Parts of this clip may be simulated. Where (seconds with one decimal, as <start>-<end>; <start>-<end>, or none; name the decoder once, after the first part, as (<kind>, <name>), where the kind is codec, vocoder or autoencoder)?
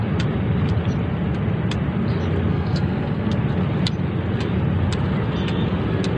2.5-3.3 (codec, SNAC)